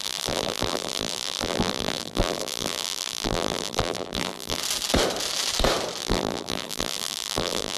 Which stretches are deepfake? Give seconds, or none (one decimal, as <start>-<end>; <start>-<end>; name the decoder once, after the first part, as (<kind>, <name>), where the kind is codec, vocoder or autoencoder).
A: 0.0-4.6 (vocoder, BigVGAN v2); 6.0-7.8